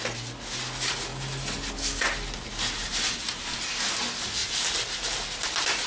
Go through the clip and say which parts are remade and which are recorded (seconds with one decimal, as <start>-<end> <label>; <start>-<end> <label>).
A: 0.0-2.8 recorded; 2.8-3.8 remade; 3.8-4.4 recorded; 4.4-5.9 remade

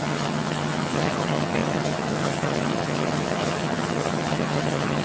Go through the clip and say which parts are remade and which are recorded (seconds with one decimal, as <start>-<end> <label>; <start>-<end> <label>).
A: 0.0-5.0 remade

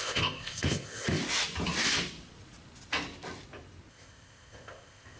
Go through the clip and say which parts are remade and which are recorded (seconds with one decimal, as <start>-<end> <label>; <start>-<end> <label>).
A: 0.0-1.2 remade; 1.2-3.9 recorded; 3.9-5.2 remade